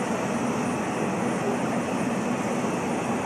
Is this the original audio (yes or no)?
yes